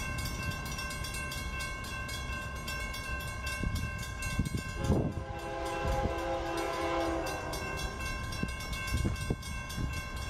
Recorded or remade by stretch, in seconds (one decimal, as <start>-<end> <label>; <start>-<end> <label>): 0.0-10.3 recorded